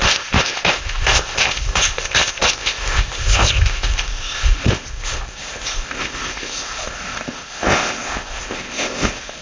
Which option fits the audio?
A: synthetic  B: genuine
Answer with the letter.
A